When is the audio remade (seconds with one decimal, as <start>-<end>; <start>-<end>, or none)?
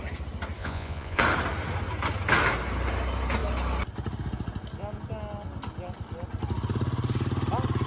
0.6-1.2